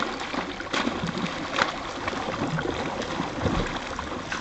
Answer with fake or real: real